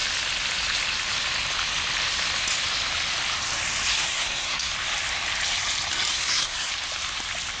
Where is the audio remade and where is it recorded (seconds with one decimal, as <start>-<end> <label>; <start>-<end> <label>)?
0.0-3.9 recorded; 3.9-4.7 remade; 4.7-6.1 recorded; 6.1-6.7 remade; 6.7-7.6 recorded